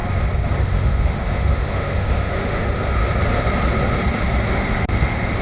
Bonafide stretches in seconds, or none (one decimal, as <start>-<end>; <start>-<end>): 0.0-0.6; 3.0-4.5